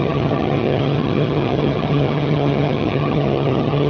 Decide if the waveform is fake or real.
fake